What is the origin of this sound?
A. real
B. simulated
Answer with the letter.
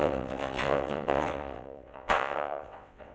B